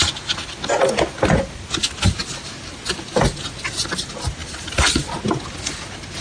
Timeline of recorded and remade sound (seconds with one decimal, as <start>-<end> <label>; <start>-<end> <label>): 0.0-2.2 recorded; 2.2-3.1 remade; 3.1-6.2 recorded